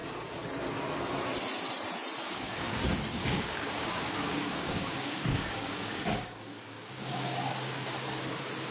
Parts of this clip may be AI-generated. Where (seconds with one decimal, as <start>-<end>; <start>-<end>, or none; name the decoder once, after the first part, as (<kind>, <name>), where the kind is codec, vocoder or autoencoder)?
2.2-2.8 (codec, DAC); 3.2-7.9